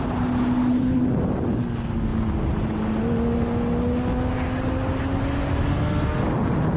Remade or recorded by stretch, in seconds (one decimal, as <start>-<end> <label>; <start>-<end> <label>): 0.0-6.8 recorded